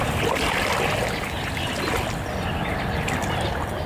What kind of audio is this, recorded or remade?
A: recorded